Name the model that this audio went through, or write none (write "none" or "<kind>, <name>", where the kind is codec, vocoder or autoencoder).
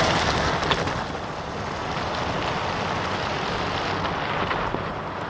none